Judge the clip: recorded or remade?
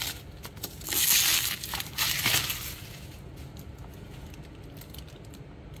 recorded